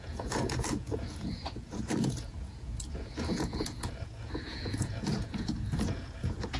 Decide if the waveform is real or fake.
fake